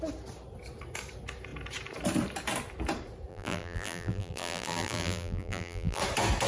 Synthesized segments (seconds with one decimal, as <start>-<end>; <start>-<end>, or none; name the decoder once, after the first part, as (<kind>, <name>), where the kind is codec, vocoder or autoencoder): 3.3-6.0 (vocoder, BigVGAN v2)